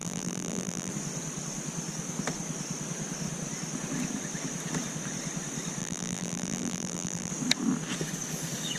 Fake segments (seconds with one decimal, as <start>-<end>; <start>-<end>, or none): 0.0-0.9; 5.8-7.3